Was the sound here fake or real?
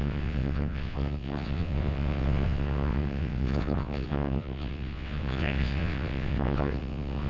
fake